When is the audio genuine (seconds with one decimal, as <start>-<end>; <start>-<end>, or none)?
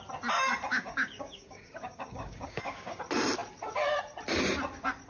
0.0-0.7; 3.0-5.1